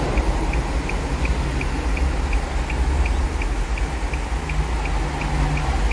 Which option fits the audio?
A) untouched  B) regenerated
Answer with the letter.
A